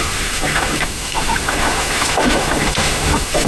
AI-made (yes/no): yes